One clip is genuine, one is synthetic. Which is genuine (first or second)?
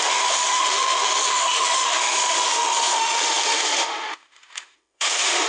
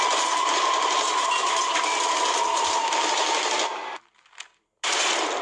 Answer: second